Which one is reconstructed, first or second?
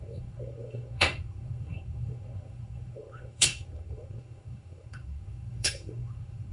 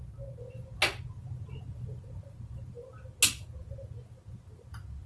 first